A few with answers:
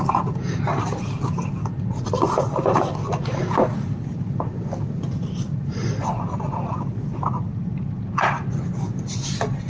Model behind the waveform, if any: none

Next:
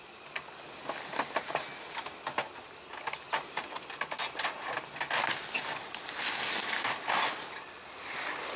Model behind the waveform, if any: none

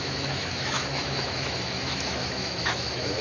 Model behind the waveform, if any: autoencoder, DAC-VAE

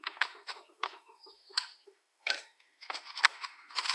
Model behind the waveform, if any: autoencoder, DAC-VAE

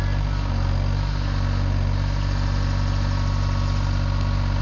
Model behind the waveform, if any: none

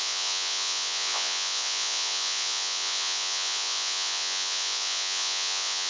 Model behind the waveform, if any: vocoder, Vocos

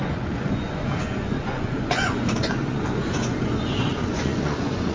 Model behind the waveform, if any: vocoder, Vocos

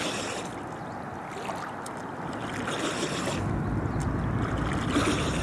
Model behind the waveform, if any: none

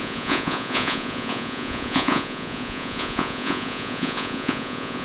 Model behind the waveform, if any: vocoder, Vocos